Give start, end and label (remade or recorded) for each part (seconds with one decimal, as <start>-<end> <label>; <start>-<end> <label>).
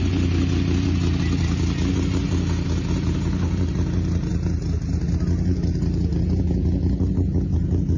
0.0-8.0 recorded